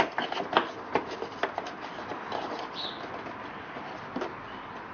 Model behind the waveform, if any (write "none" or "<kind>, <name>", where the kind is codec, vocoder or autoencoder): none